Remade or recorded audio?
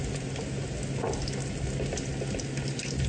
recorded